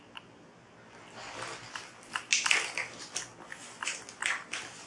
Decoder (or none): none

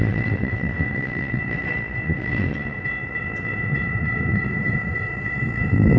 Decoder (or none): vocoder, WaveNeXt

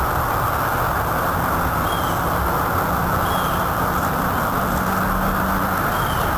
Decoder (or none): none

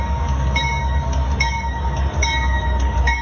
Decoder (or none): codec, DAC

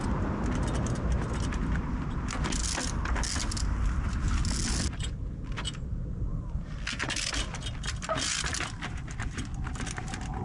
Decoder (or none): none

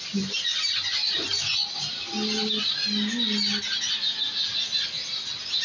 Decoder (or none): none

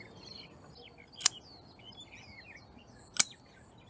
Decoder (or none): none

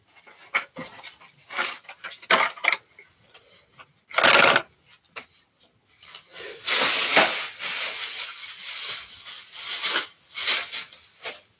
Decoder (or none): none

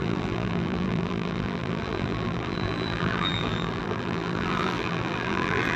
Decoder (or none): vocoder, BigVGAN v2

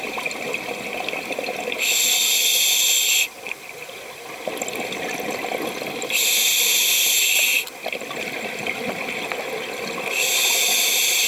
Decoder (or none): none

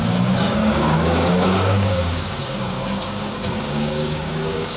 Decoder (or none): codec, DAC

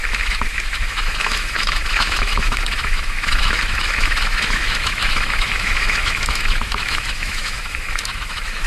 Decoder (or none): autoencoder, DAC-VAE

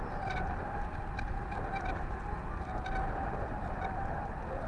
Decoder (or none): none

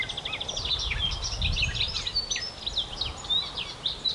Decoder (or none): none